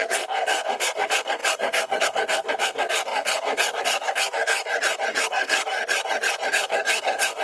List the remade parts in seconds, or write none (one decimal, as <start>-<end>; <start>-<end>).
0.0-4.6; 5.2-5.8; 6.5-7.4